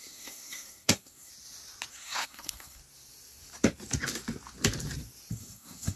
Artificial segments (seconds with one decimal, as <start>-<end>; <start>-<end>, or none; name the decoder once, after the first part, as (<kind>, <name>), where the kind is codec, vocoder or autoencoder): 0.0-1.3 (codec, SNAC); 1.9-2.8; 5.3-6.0